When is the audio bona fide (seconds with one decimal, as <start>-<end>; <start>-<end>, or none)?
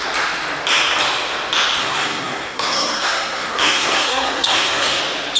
0.0-1.8; 5.0-5.4